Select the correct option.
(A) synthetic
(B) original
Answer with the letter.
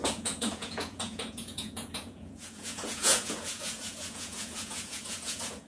A